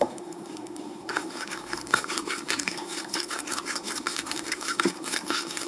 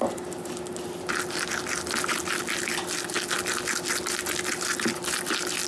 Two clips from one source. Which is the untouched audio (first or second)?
second